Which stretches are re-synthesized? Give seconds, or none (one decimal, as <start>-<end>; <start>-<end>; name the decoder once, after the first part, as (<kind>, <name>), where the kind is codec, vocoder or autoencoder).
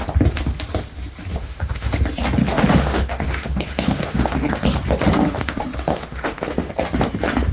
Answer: 1.3-2.0 (autoencoder, DAC-VAE); 2.4-4.5; 5.9-6.7